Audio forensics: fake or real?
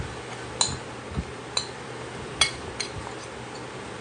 real